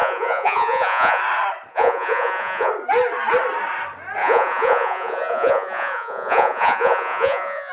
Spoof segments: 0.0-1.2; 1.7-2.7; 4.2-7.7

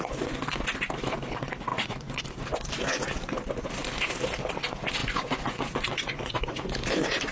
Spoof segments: 1.7-2.2; 5.0-6.6

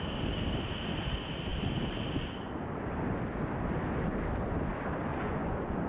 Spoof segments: 5.1-5.9

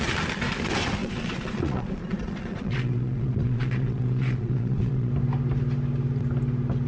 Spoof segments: 1.0-5.1

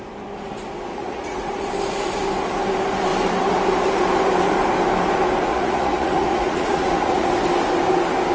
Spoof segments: 0.9-1.6; 5.5-7.3

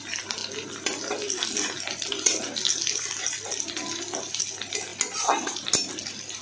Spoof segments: none